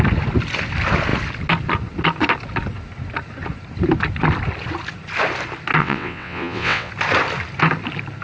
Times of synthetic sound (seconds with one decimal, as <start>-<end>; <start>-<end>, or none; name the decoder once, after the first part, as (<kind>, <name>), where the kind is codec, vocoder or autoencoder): 5.8-6.9 (vocoder, WaveNeXt)